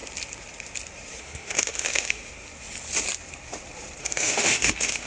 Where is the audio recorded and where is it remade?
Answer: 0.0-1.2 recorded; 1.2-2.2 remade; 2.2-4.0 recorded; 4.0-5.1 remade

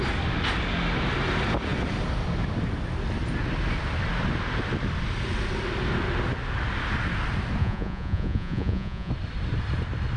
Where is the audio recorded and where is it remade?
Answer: 0.0-7.6 recorded; 7.6-9.1 remade; 9.1-10.2 recorded

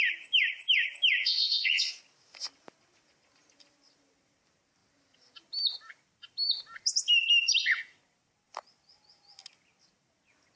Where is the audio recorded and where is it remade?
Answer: 0.0-1.2 recorded; 1.2-2.0 remade; 2.0-10.6 recorded